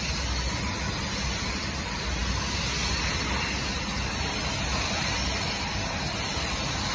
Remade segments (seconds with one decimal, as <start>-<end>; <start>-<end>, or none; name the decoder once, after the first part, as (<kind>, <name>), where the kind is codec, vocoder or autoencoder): none